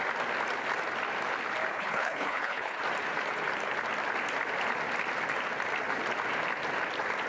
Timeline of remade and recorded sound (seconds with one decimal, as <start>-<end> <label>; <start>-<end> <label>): 0.0-1.7 recorded; 1.7-2.8 remade; 2.8-7.3 recorded